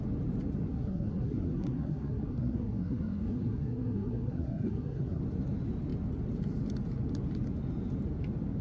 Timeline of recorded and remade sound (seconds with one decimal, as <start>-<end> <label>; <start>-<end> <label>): 0.0-0.7 recorded; 0.7-5.2 remade; 5.2-8.6 recorded